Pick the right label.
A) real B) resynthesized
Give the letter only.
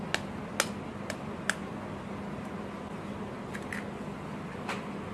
A